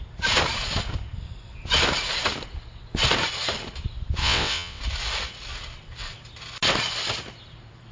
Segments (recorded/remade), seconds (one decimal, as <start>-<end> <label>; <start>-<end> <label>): 0.0-4.2 recorded; 4.2-4.8 remade; 4.8-7.9 recorded